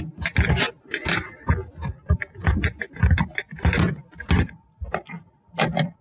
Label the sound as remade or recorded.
recorded